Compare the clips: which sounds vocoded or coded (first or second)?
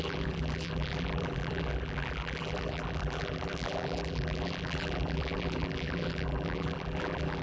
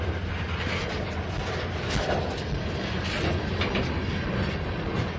first